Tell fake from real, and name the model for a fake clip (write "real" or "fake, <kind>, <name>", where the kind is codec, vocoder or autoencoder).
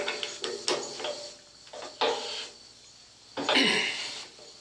real